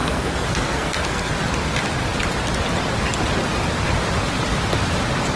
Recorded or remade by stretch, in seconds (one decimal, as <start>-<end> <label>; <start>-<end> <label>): 0.0-1.3 remade; 1.3-5.4 recorded